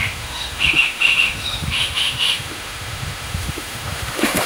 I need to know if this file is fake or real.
fake